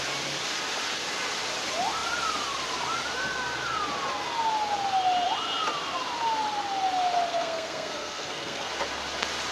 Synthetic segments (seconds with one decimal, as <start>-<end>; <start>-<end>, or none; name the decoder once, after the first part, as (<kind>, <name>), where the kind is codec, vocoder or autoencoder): 7.3-8.7 (codec, SNAC)